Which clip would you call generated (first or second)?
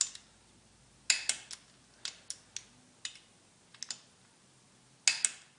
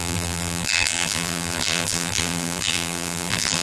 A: second